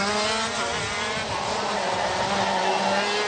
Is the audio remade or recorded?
recorded